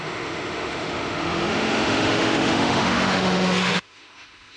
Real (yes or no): no